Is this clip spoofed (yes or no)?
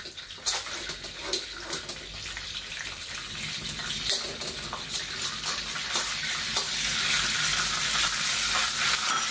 no